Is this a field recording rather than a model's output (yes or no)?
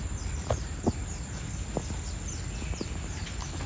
yes